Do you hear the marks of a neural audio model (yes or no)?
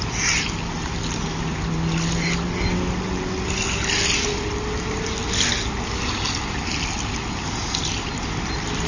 no